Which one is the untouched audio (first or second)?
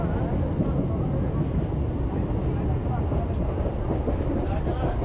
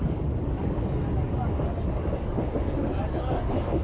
first